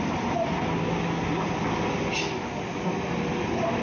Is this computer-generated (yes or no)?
no